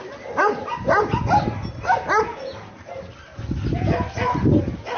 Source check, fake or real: real